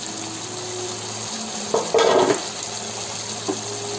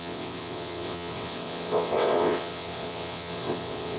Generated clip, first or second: second